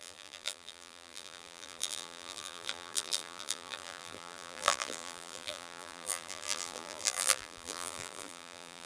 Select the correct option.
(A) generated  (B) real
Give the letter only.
A